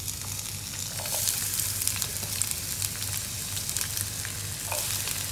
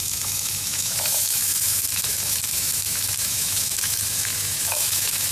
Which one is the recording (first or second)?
first